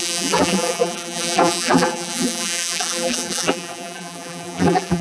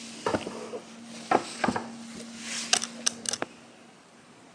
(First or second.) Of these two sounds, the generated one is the first